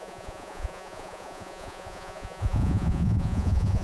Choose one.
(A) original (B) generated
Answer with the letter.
B